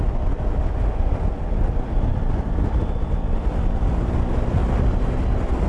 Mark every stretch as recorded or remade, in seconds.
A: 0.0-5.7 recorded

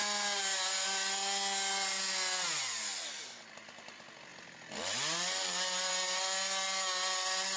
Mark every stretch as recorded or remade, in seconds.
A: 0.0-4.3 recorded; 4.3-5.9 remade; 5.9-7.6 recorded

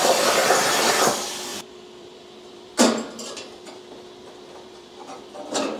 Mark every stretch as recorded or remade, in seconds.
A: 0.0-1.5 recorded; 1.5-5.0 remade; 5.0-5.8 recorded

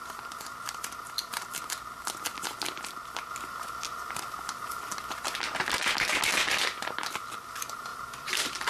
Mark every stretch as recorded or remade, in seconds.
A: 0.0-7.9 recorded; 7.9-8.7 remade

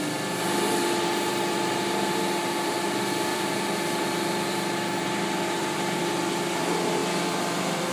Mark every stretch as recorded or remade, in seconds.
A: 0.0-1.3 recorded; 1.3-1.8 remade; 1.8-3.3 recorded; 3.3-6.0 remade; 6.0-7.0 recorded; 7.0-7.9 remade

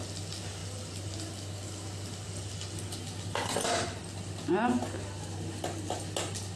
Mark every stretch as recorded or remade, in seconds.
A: 0.0-6.6 recorded

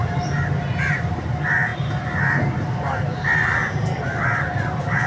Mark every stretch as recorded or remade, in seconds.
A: 0.0-1.7 recorded; 1.7-2.2 remade; 2.2-5.1 recorded